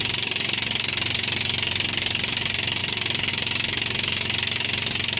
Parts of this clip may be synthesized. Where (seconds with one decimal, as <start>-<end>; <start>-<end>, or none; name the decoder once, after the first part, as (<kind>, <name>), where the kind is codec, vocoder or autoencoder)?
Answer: none